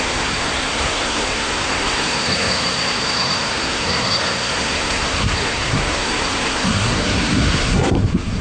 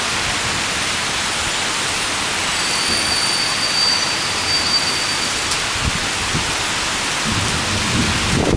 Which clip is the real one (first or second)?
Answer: second